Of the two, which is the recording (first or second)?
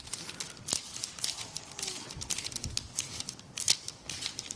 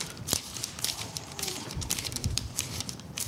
first